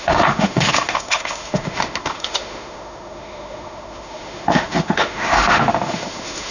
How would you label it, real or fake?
fake